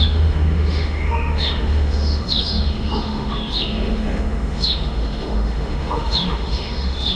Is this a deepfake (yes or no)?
yes